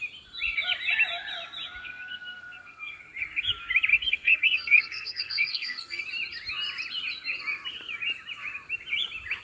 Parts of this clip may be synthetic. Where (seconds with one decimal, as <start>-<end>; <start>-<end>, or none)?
1.8-3.0; 3.9-6.0